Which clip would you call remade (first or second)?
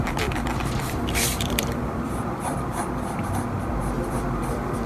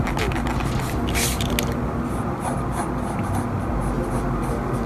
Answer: first